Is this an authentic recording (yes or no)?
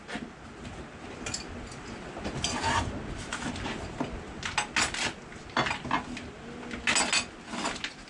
yes